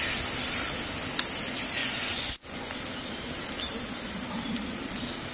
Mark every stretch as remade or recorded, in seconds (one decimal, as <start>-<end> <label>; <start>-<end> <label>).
0.0-1.8 recorded; 1.8-2.8 remade; 2.8-5.3 recorded